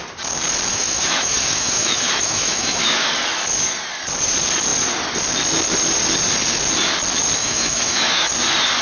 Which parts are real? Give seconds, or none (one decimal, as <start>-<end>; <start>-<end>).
0.0-0.7; 3.1-7.4; 8.3-8.8